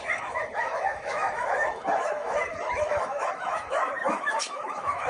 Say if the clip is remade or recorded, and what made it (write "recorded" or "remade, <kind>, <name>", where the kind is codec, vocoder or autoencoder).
remade, autoencoder, DAC-VAE